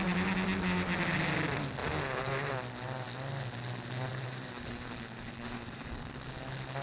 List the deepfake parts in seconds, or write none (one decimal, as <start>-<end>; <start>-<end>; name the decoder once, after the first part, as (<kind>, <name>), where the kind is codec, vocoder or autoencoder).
1.8-2.5 (vocoder, BigVGAN v2); 4.1-5.9